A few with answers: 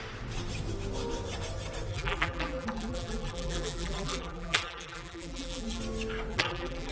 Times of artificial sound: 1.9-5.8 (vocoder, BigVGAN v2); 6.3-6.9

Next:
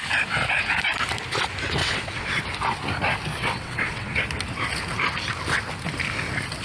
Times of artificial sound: 1.8-2.4 (vocoder, WaveNeXt); 3.4-4.2

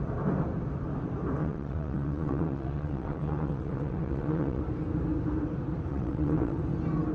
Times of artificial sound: 1.4-4.6 (vocoder, WaveNeXt); 5.9-6.6

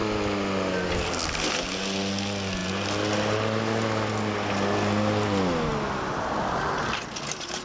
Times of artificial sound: none

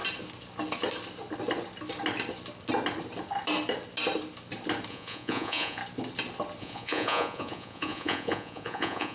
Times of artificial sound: 4.9-5.8 (vocoder, Vocos); 6.6-9.1